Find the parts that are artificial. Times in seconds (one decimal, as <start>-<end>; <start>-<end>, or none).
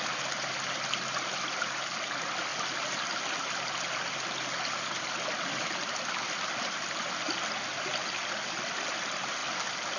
none